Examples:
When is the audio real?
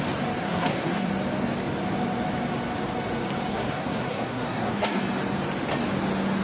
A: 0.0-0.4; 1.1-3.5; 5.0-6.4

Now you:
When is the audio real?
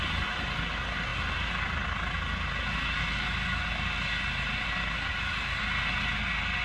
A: 0.0-6.6